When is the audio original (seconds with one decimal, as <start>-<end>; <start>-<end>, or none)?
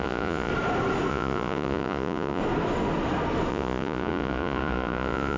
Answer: 0.5-1.1; 2.4-3.5